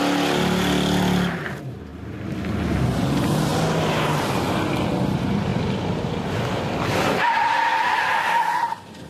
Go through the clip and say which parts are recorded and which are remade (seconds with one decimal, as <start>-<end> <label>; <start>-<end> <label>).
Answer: 0.0-9.1 recorded